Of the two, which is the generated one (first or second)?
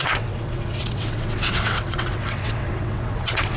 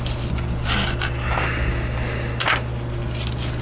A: first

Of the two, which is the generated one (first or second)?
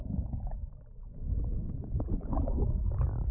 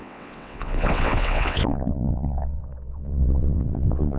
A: second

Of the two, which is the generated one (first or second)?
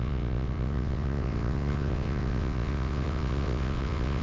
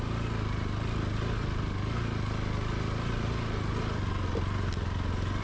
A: first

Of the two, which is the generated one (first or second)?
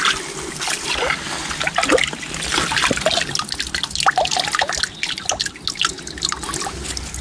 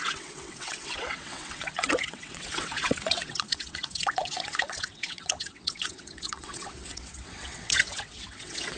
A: second